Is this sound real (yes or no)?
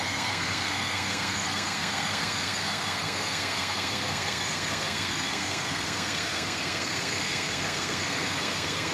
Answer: no